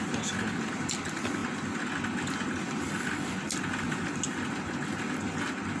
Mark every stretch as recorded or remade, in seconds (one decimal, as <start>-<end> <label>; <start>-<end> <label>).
0.0-5.8 recorded